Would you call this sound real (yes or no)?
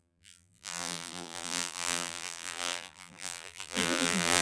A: no